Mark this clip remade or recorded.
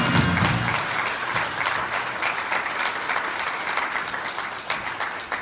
recorded